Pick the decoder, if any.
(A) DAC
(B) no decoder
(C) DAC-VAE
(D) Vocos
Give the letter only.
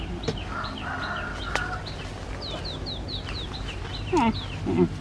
B